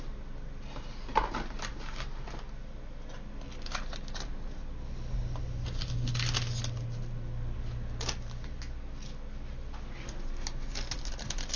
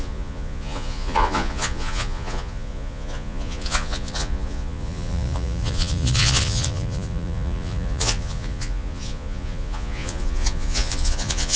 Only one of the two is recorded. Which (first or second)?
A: first